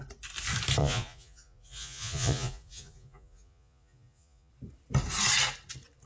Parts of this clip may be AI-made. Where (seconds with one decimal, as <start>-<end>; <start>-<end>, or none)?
0.8-4.5

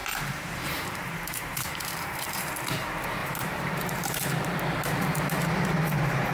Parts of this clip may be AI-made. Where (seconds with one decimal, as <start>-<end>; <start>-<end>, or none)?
0.0-2.5; 3.2-4.6

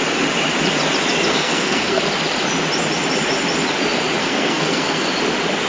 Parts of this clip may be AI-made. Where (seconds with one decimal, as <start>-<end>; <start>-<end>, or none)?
1.3-2.0; 4.2-5.1

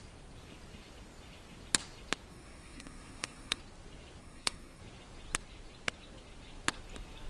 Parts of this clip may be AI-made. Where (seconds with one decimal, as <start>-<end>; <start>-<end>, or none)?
2.3-3.6; 4.2-4.8